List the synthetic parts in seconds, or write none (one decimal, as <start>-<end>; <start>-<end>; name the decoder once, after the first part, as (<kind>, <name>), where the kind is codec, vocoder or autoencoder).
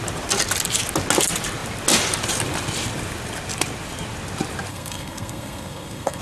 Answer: 4.7-6.2 (codec, SNAC)